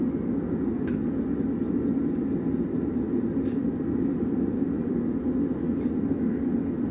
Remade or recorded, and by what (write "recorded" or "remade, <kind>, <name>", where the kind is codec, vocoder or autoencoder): recorded